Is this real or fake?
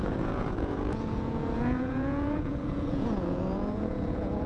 fake